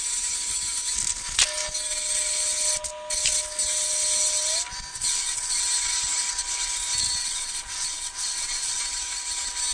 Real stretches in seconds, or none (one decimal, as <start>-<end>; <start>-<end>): 0.0-4.9; 5.6-7.2; 8.8-9.7